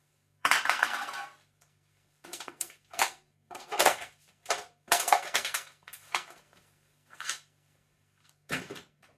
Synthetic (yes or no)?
yes